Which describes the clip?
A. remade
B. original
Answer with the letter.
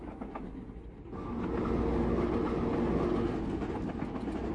B